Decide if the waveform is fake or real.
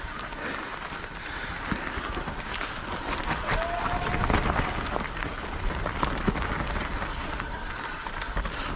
real